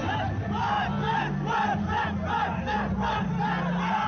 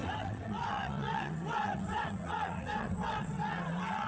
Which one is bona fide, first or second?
first